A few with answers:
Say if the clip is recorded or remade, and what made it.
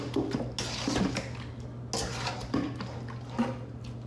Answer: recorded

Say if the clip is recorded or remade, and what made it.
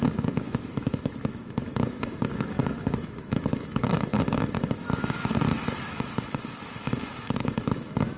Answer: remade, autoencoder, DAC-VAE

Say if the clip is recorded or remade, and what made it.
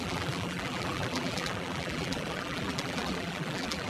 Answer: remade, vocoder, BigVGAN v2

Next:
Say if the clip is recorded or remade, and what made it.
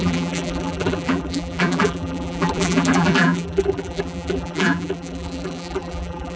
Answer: remade, vocoder, BigVGAN v2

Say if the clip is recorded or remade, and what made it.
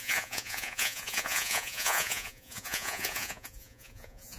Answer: remade, vocoder, Vocos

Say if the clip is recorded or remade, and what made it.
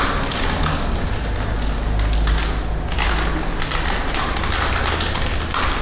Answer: recorded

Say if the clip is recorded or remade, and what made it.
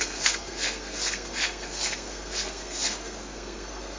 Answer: remade, codec, SNAC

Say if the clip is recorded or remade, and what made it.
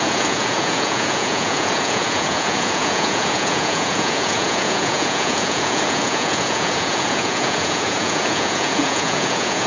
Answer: remade, vocoder, Vocos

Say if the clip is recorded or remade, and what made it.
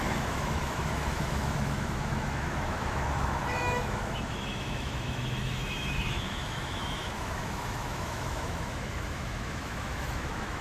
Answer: remade, autoencoder, DAC-VAE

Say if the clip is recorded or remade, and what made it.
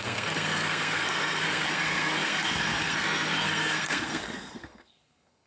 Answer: remade, codec, SNAC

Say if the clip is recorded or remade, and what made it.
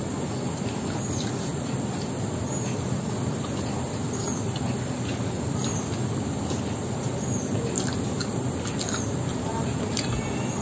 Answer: recorded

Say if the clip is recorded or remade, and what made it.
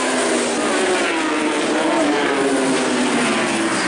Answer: recorded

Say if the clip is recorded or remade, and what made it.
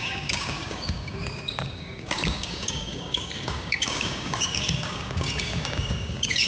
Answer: remade, codec, DAC